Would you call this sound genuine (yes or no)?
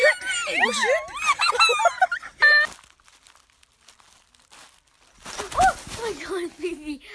yes